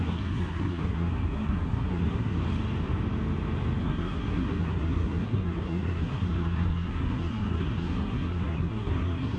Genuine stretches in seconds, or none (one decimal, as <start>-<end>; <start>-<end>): 2.4-3.8